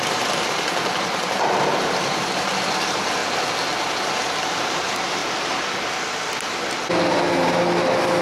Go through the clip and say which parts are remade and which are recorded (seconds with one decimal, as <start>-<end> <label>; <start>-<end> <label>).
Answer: 0.0-0.7 remade; 0.7-1.8 recorded; 1.8-3.2 remade; 3.2-4.7 recorded; 4.7-5.2 remade; 5.2-8.2 recorded